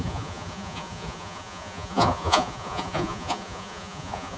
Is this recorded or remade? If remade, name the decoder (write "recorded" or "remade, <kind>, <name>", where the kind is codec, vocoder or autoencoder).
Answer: remade, vocoder, Vocos